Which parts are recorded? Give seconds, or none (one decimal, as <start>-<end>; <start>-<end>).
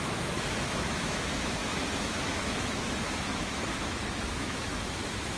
none